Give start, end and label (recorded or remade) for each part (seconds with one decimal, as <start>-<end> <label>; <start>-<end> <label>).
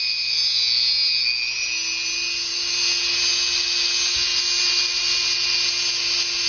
0.0-6.5 recorded